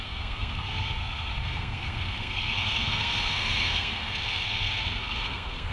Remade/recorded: remade